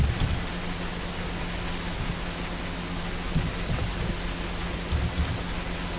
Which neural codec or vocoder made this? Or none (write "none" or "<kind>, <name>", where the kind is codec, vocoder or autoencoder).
none